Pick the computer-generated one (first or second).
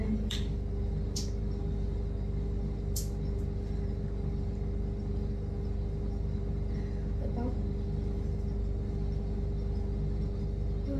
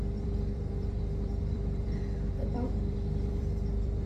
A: second